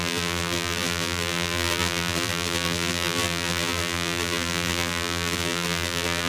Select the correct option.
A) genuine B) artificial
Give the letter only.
B